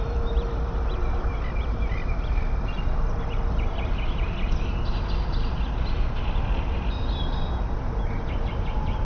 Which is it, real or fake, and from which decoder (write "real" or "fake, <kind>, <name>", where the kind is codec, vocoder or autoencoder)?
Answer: fake, vocoder, BigVGAN v2